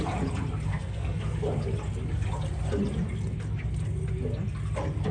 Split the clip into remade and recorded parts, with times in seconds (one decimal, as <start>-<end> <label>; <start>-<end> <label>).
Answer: 0.0-0.7 recorded; 0.7-1.2 remade; 1.2-5.1 recorded

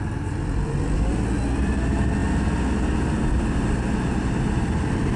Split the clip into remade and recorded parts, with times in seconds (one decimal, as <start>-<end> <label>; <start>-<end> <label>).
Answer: 0.0-5.2 recorded